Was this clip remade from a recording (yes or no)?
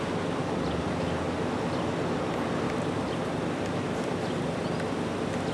no